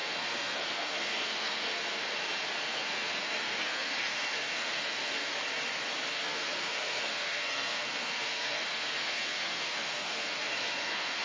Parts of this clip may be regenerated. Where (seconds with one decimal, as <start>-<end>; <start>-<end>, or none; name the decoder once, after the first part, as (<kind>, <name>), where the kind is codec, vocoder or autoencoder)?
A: 0.0-2.0 (codec, SNAC); 2.6-5.3; 6.1-11.2